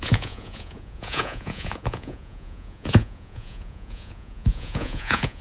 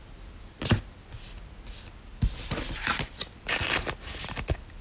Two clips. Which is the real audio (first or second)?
second